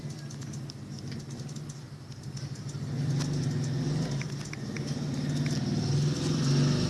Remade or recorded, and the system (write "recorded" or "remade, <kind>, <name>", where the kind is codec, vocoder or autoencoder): recorded